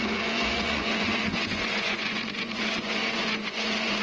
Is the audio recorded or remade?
remade